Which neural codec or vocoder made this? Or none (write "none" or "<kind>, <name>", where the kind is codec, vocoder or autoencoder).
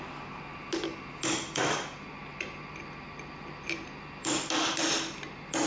none